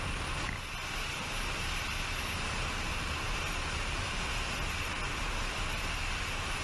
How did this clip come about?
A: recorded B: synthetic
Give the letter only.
A